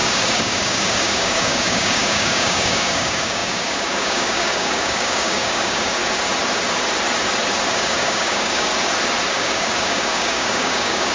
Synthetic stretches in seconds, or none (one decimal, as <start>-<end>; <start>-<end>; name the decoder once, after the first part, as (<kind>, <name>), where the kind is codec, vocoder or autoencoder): 0.0-6.0 (codec, DAC); 7.7-8.7; 9.3-11.1